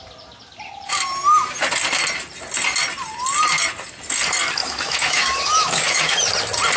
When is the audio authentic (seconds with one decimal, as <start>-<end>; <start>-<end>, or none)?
0.0-4.6; 6.2-6.8